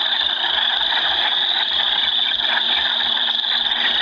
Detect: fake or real real